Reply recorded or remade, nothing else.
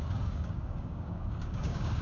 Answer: remade